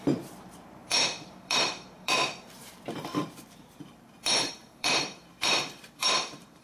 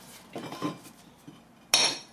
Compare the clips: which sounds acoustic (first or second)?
second